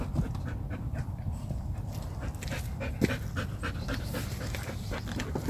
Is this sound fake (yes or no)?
no